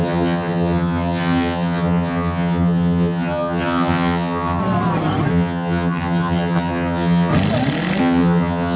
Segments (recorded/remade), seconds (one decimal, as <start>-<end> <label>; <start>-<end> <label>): 0.0-4.6 remade; 4.6-5.3 recorded; 5.3-7.3 remade; 7.3-8.0 recorded; 8.0-8.8 remade